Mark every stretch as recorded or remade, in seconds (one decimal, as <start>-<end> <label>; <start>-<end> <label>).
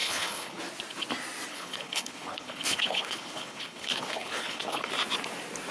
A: 0.0-0.6 remade; 0.6-1.5 recorded; 1.5-4.9 remade; 4.9-5.7 recorded